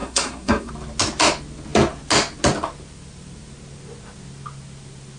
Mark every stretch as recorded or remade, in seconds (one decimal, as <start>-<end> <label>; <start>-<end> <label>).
0.0-0.7 remade; 0.7-5.2 recorded